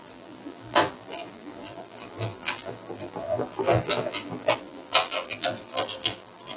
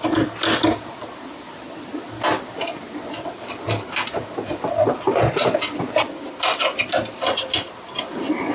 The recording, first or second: second